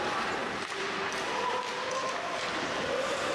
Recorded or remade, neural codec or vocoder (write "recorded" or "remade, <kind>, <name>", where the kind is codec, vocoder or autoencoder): recorded